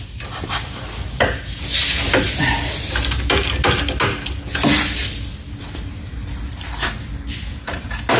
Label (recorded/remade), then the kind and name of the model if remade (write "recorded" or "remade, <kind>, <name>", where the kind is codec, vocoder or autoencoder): recorded